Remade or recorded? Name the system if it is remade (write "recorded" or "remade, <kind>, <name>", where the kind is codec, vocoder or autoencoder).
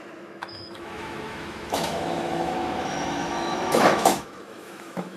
remade, autoencoder, DAC-VAE